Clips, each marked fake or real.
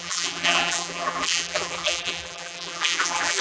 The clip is fake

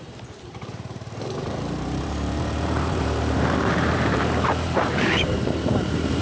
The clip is fake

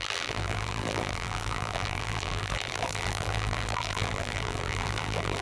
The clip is fake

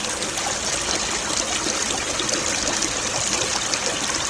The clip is real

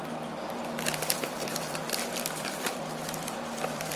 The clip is fake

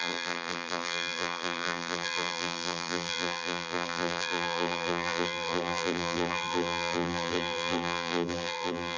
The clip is fake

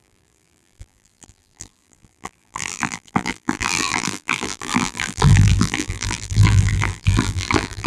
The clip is fake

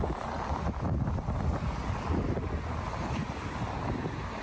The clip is real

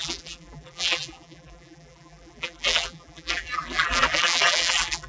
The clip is fake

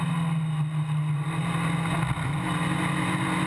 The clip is real